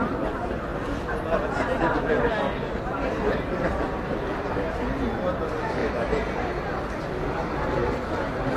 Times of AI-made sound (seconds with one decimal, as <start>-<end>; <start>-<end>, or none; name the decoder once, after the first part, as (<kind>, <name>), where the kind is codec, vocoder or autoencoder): 3.7-4.5 (vocoder, BigVGAN v2)